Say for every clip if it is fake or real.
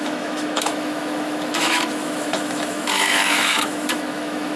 fake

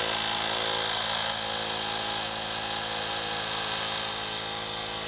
real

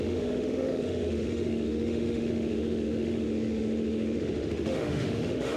fake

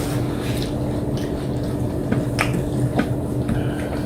real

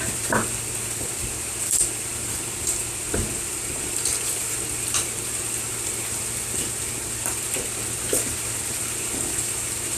real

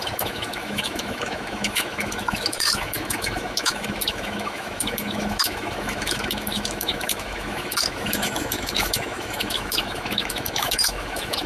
fake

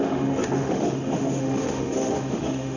fake